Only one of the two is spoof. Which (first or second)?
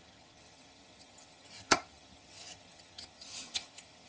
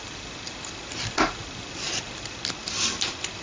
first